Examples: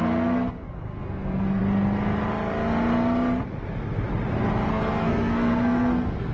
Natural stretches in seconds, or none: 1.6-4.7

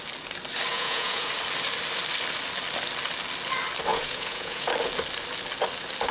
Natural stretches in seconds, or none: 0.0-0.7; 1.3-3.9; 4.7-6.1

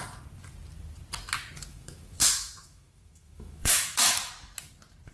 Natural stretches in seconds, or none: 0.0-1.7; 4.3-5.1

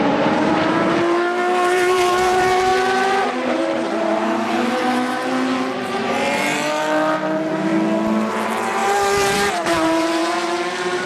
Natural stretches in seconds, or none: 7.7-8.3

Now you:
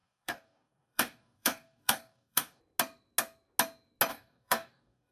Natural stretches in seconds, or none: 2.6-4.1

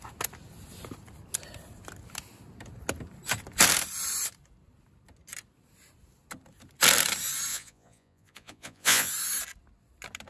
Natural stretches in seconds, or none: 0.0-7.5; 9.1-10.3